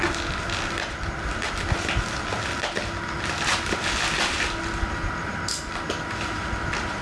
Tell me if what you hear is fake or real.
real